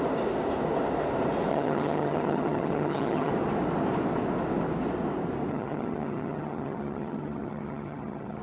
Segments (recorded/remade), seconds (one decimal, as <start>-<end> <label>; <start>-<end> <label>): 0.0-1.5 recorded; 1.5-3.3 remade; 3.3-5.5 recorded; 5.5-8.4 remade